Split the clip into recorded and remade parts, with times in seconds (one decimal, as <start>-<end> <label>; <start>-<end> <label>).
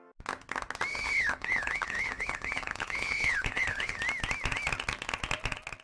0.0-0.9 recorded; 0.9-4.0 remade; 4.0-5.8 recorded